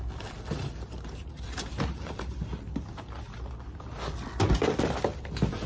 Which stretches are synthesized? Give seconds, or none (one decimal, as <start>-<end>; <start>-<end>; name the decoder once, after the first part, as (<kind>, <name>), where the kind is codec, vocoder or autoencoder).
0.7-2.3 (vocoder, BigVGAN v2)